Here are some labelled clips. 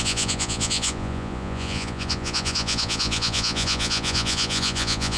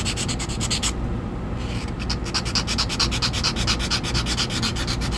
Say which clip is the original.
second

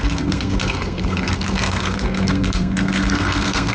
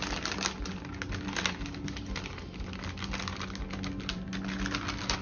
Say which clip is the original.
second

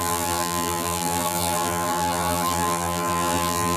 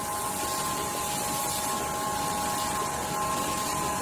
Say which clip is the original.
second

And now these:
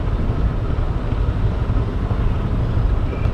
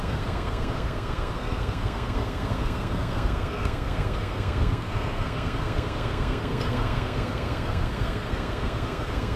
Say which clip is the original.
first